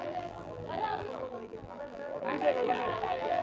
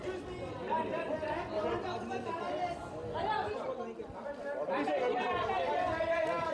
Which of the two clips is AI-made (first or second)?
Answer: first